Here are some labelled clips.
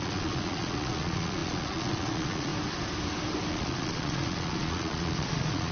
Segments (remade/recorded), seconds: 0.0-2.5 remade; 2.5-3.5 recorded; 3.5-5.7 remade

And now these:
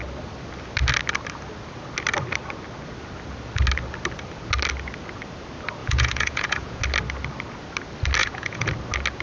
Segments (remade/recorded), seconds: 0.0-5.8 recorded; 5.8-6.8 remade; 6.8-8.2 recorded; 8.2-8.7 remade; 8.7-9.2 recorded